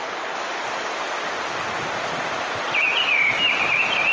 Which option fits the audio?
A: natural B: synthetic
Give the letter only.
A